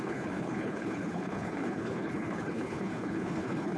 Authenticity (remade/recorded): remade